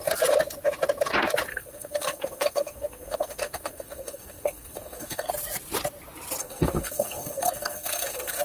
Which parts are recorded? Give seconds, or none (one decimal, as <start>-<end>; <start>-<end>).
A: 0.0-1.5; 5.3-6.4